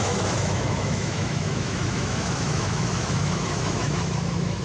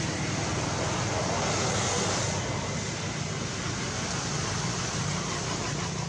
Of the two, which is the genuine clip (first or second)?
second